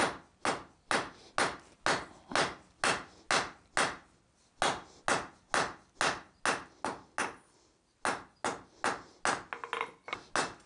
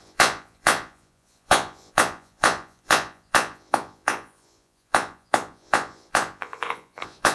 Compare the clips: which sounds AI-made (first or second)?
second